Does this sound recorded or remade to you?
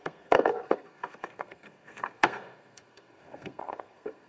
remade